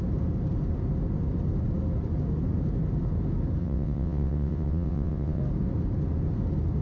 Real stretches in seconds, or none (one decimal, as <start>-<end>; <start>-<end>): 0.0-3.6; 5.4-6.8